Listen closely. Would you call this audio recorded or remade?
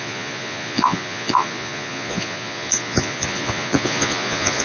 remade